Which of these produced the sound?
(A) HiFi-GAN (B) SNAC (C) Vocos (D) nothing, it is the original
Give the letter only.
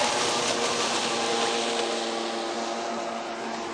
D